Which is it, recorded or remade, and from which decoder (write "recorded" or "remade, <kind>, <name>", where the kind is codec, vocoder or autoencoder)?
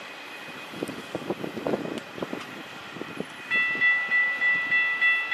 recorded